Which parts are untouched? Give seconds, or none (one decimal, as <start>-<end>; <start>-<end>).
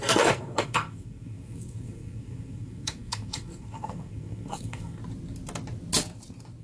5.0-6.6